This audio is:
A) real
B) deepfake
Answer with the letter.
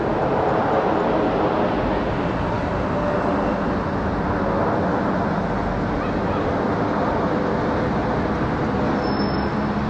A